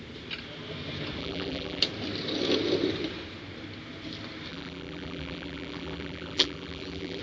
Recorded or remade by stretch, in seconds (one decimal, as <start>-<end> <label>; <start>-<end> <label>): 0.0-1.2 recorded; 1.2-1.8 remade; 1.8-4.5 recorded; 4.5-7.2 remade